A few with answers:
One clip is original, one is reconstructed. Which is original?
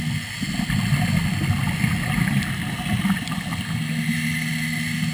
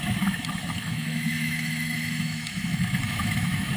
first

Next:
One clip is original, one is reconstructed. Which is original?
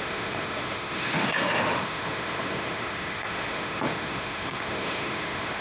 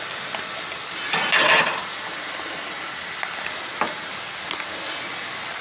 second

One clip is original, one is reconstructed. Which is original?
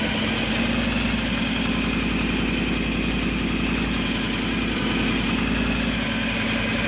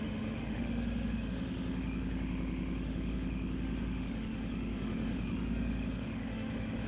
first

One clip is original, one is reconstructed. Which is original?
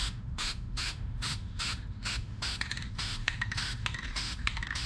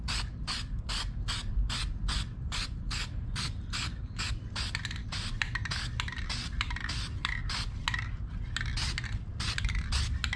second